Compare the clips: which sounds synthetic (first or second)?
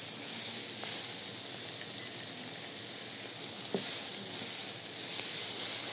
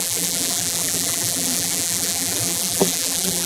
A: second